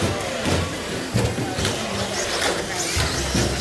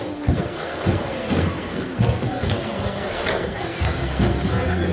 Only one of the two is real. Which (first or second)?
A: first